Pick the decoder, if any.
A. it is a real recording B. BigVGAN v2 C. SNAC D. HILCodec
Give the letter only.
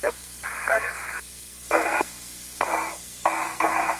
C